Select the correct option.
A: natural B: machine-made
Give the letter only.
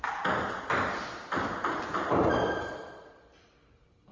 A